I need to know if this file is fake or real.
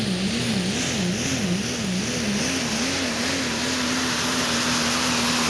real